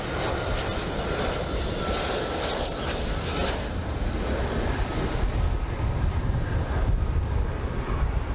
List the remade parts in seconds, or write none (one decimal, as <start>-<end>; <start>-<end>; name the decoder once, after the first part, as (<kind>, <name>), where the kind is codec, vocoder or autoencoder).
none